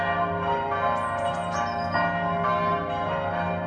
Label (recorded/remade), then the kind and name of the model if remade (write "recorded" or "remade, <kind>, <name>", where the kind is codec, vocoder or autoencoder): recorded